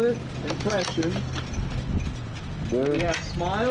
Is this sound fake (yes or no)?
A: no